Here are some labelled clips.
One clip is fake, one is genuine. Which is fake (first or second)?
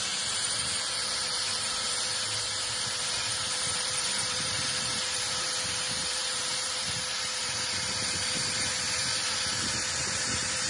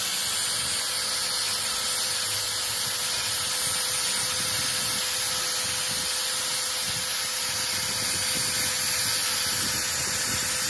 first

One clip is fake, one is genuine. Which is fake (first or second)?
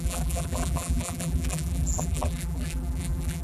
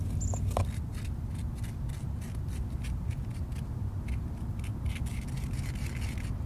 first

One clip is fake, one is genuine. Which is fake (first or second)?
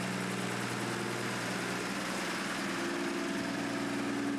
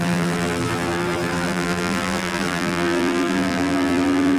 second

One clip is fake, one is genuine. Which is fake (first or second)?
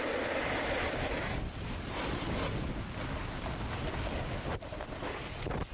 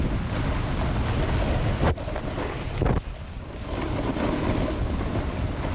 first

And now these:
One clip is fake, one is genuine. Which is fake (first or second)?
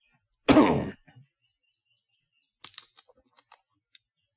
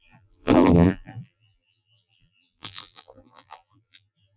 second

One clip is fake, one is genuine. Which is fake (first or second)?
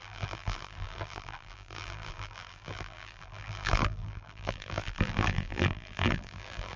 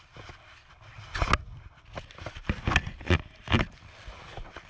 first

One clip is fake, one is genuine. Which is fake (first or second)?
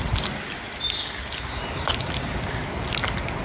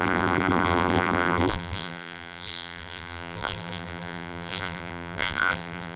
second